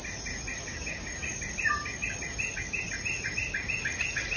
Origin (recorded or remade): recorded